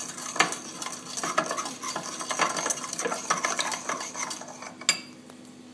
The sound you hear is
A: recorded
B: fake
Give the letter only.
A